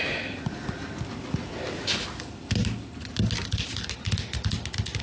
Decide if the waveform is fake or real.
real